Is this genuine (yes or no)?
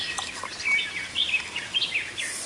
yes